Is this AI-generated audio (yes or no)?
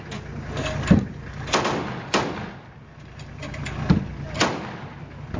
no